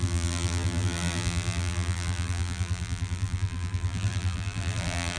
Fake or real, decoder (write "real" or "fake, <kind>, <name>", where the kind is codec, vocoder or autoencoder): fake, vocoder, BigVGAN v2